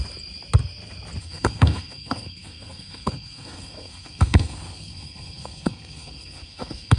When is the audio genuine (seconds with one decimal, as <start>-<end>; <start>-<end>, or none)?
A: 0.0-1.2